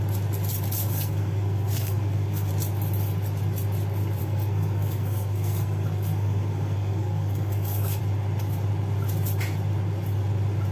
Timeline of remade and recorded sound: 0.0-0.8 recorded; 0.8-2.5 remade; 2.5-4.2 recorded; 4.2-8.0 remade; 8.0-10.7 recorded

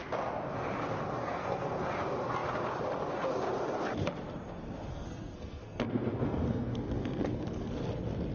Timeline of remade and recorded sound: 0.0-1.2 recorded; 1.2-1.8 remade; 1.8-4.9 recorded; 4.9-7.7 remade; 7.7-8.3 recorded

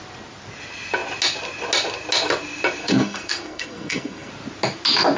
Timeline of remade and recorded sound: 0.0-2.8 recorded; 2.8-4.3 remade; 4.3-5.2 recorded

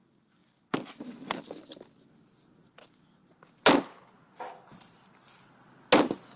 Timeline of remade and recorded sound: 0.0-6.4 recorded

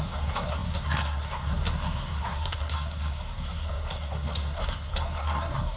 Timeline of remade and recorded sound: 0.0-5.8 remade